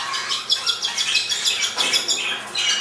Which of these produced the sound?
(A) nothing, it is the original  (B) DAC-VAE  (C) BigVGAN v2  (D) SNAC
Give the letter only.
A